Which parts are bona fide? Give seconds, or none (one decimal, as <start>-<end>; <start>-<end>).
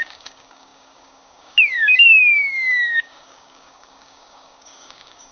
none